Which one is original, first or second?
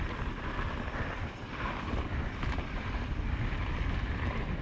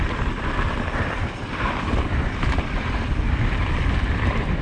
first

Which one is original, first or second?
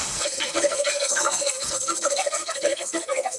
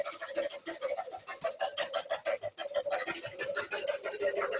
second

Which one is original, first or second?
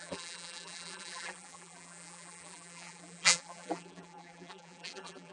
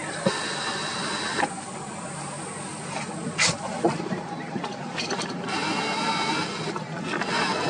second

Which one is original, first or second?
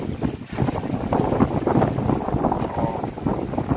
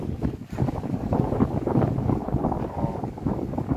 first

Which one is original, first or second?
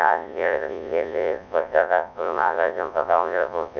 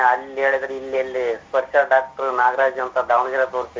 second